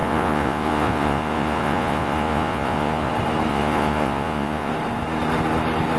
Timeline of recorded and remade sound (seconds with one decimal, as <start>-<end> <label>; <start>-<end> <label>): 0.0-3.1 remade; 3.1-3.5 recorded; 3.5-4.7 remade; 4.7-6.0 recorded